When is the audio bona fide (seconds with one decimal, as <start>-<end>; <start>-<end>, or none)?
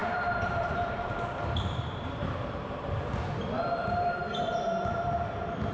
3.4-5.7